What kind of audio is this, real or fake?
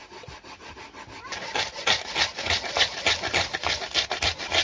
real